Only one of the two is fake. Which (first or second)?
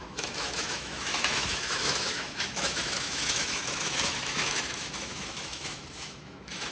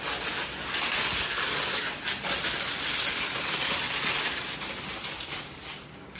first